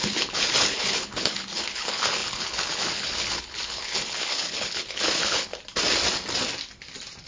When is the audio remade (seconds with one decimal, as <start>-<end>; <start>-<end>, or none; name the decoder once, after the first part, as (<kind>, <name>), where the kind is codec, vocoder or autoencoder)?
0.0-5.5 (codec, HILCodec)